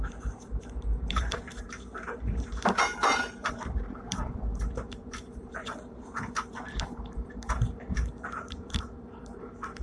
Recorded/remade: remade